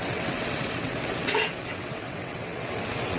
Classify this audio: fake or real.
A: fake